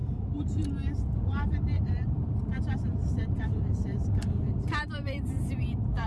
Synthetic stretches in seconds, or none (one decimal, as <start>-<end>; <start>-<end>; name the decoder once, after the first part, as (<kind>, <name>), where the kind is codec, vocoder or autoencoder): 0.0-6.1 (vocoder, BigVGAN v2)